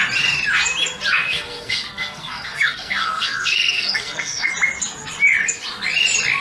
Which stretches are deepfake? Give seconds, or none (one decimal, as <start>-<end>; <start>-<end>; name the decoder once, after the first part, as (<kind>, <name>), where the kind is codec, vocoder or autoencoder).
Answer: 1.2-4.5 (codec, SNAC)